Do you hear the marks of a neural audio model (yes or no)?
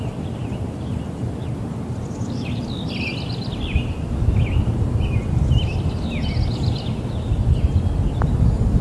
no